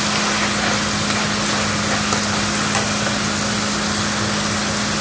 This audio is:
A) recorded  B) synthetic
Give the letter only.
A